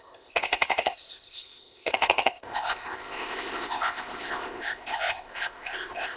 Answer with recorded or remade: remade